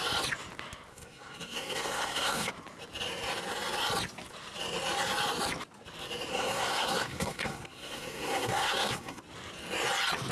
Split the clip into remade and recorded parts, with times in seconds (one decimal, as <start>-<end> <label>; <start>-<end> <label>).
0.0-0.9 recorded; 0.9-2.5 remade; 2.5-6.3 recorded; 6.3-9.2 remade; 9.2-10.3 recorded